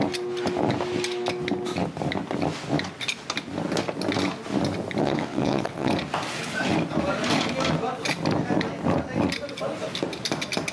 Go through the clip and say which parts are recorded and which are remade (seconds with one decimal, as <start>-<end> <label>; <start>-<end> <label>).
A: 0.0-5.0 recorded; 5.0-5.9 remade; 5.9-10.7 recorded